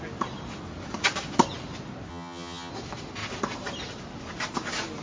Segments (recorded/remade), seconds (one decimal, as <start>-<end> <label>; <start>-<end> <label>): 0.0-2.1 recorded; 2.1-2.7 remade; 2.7-5.0 recorded